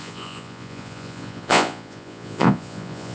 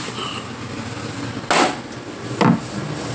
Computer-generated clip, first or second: first